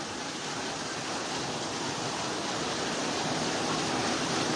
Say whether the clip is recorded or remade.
recorded